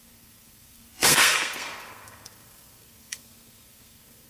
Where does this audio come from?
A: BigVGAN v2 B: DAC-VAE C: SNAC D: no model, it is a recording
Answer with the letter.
C